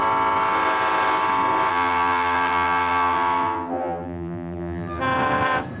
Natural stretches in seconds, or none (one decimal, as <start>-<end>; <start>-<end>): 0.0-1.7; 5.0-5.8

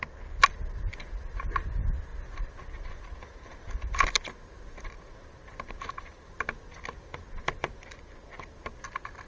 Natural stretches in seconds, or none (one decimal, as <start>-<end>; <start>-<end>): 0.0-9.3

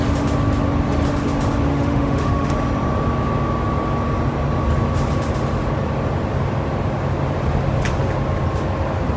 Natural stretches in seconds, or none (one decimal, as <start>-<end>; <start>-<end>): 0.0-1.7; 2.5-9.2

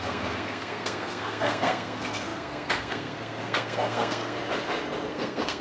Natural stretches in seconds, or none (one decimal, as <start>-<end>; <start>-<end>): 4.4-5.1

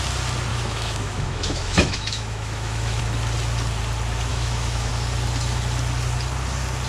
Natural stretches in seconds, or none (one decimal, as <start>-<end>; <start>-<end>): 0.0-0.5; 3.0-4.3; 4.9-6.9

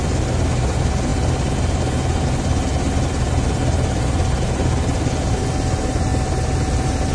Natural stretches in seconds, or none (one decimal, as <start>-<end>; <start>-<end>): 0.0-7.1